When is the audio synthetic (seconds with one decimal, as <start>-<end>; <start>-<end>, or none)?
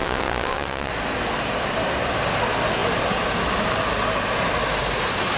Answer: 0.0-0.9